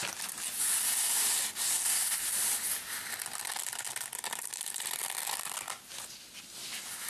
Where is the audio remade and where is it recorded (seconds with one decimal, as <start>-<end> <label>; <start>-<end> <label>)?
0.0-7.1 recorded